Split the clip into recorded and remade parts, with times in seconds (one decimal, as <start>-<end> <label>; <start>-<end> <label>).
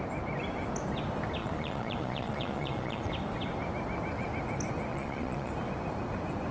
0.0-1.4 recorded; 1.4-3.1 remade; 3.1-4.9 recorded; 4.9-5.5 remade; 5.5-6.5 recorded